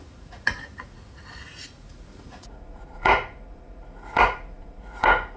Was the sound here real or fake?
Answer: fake